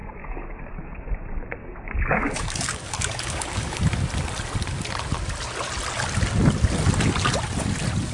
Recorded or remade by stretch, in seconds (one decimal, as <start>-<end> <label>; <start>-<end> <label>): 0.0-1.1 remade; 1.1-1.6 recorded; 1.6-3.8 remade; 3.8-8.1 recorded